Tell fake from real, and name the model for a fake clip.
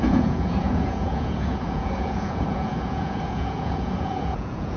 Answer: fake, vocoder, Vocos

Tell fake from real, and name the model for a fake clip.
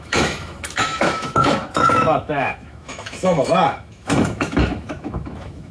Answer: fake, autoencoder, DAC-VAE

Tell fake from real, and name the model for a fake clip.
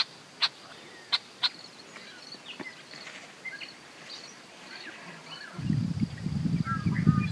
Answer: real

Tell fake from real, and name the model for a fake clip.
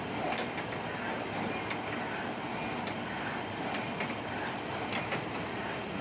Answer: real